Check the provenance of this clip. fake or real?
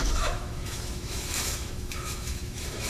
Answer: fake